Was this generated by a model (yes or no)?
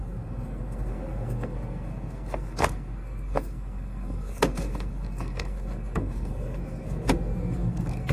yes